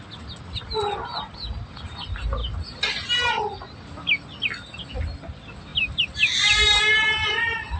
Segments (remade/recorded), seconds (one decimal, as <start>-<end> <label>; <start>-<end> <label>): 0.0-7.8 recorded